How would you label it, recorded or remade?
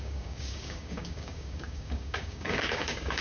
remade